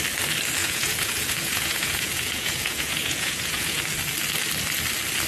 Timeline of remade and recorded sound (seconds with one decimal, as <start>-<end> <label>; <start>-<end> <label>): 0.0-0.6 recorded; 0.6-3.8 remade; 3.8-5.3 recorded